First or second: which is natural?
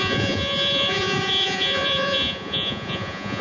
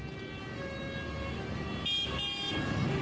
second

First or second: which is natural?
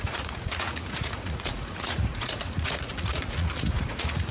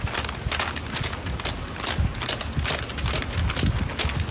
second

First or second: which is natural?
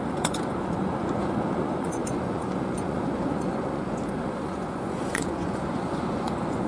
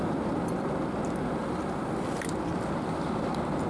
second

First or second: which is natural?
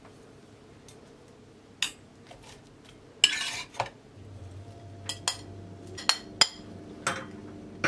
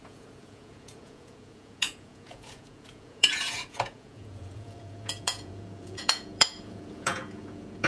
first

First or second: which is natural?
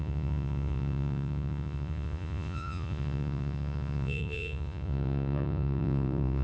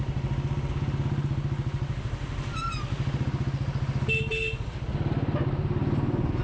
second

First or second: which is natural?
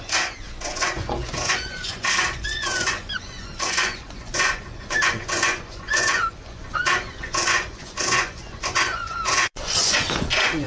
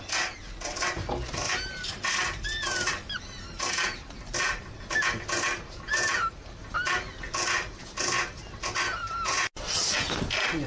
second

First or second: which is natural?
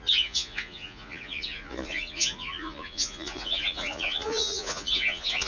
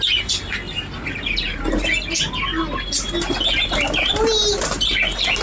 second